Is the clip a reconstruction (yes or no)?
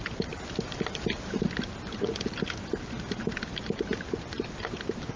no